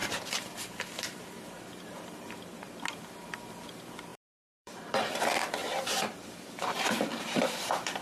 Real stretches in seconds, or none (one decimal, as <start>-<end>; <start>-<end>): 2.3-4.1; 5.1-5.6